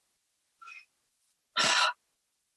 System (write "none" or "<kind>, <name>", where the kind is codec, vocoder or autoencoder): none